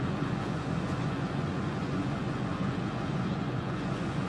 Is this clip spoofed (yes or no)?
yes